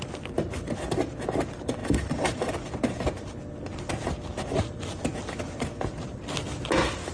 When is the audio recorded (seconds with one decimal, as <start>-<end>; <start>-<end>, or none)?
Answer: 0.0-1.8; 2.5-7.1